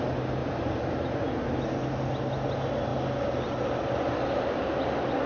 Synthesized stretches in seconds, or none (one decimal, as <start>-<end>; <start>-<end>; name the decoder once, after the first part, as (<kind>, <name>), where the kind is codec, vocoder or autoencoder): 0.4-1.4 (vocoder, BigVGAN v2)